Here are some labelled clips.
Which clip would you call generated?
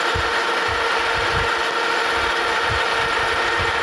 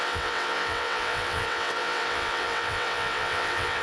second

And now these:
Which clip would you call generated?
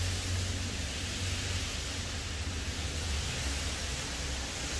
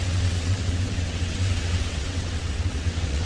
second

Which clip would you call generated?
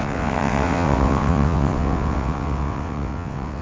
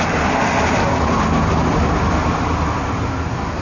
first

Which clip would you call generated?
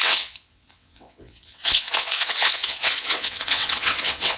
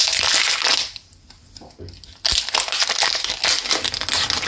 first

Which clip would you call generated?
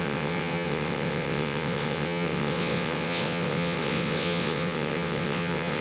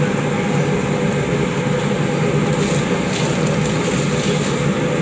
first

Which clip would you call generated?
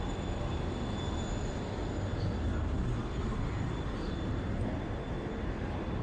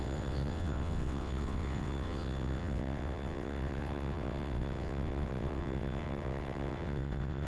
second